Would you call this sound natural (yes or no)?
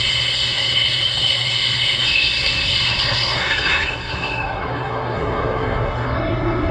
no